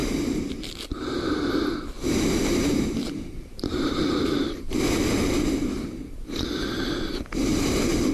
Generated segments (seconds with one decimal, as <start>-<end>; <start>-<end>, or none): 0.0-0.8; 2.0-4.8; 6.0-6.6; 7.5-8.1